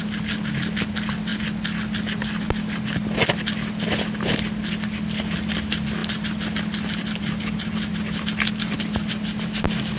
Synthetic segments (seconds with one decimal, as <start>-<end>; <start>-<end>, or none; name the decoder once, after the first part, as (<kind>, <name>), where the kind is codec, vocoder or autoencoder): 6.0-7.2 (vocoder, BigVGAN v2)